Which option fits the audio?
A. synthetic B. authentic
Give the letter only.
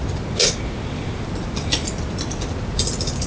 B